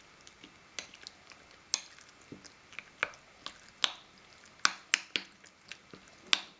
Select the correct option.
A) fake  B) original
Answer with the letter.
B